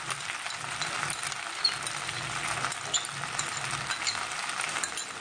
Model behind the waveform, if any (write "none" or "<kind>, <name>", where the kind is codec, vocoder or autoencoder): none